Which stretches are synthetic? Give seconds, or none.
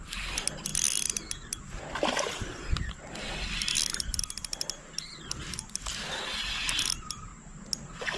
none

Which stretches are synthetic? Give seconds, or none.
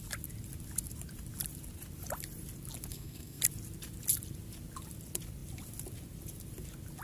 2.9-3.4 (codec, SNAC)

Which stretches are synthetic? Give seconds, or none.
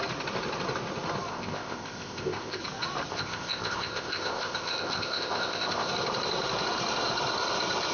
1.3-2.6 (codec, ZipCodec); 3.1-5.9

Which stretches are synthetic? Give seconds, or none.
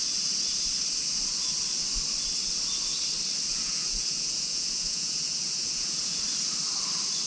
3.5-6.2 (vocoder, Vocos)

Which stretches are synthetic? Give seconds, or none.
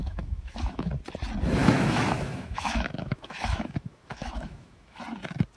0.0-0.9 (autoencoder, DAC-VAE); 1.6-5.0